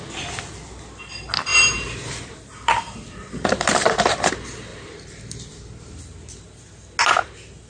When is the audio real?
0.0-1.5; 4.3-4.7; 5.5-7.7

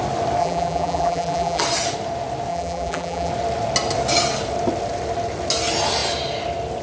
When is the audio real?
0.0-0.4; 1.6-2.5; 3.3-6.8

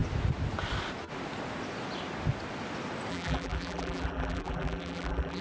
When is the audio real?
0.0-3.1

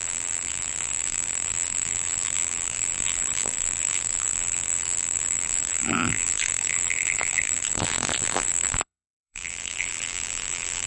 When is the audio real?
none

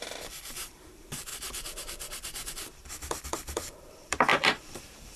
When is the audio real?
none

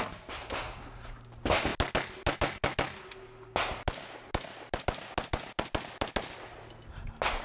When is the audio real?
0.0-7.4

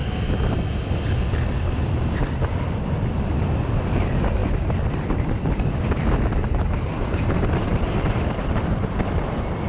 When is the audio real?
none

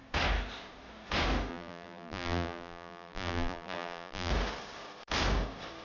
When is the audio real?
0.0-1.5; 4.3-5.8